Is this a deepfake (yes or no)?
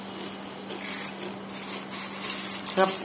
no